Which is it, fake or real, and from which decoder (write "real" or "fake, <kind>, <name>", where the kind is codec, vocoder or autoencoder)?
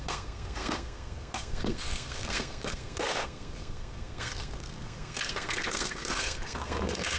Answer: fake, codec, SNAC